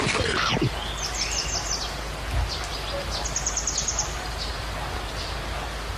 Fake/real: real